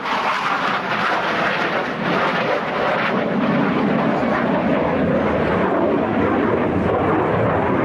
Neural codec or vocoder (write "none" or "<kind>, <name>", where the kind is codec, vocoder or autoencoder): none